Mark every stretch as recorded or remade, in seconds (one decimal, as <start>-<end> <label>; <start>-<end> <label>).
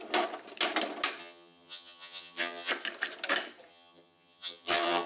0.0-1.2 recorded; 1.2-2.7 remade; 2.7-3.7 recorded; 3.7-5.1 remade